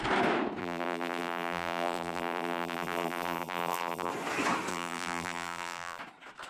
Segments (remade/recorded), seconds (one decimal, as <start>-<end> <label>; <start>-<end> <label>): 0.0-0.6 recorded; 0.6-4.1 remade; 4.1-4.7 recorded; 4.7-6.0 remade; 6.0-6.5 recorded